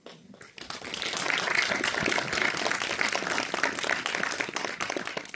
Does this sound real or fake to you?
real